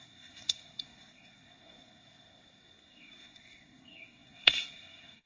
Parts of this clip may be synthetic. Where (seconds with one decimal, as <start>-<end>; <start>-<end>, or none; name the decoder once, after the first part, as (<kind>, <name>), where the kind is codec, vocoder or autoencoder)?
0.0-5.3 (codec, SNAC)